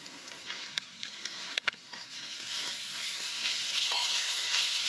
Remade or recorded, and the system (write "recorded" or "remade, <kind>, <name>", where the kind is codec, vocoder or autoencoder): remade, codec, SNAC